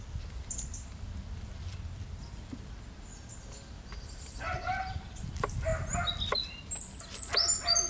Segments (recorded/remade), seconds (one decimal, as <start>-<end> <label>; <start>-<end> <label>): 0.0-7.9 recorded